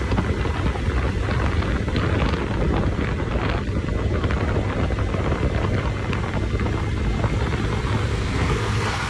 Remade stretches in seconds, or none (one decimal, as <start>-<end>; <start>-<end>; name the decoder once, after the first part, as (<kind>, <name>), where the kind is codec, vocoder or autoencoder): 8.1-9.1 (codec, SNAC)